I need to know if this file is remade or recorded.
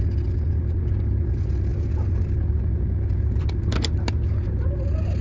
recorded